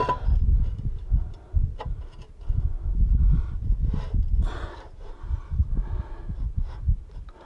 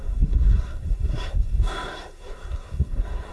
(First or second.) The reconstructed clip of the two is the second